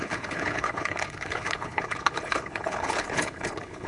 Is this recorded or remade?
remade